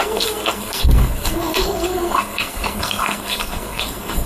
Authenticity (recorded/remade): remade